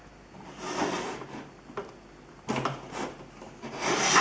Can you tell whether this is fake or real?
real